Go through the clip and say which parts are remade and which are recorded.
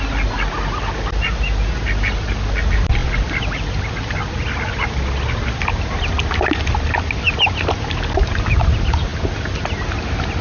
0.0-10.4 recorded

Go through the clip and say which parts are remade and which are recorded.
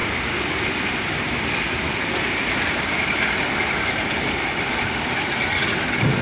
0.0-6.2 recorded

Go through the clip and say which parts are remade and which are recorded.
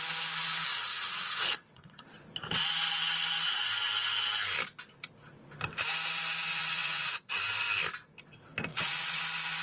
0.0-0.7 recorded; 0.7-2.0 remade; 2.0-6.5 recorded; 6.5-7.3 remade; 7.3-8.7 recorded; 8.7-9.2 remade; 9.2-9.6 recorded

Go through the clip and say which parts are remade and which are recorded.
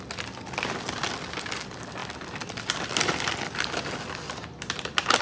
0.0-5.2 recorded